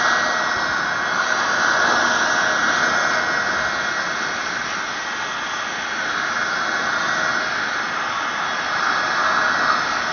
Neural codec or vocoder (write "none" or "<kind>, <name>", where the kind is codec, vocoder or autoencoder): none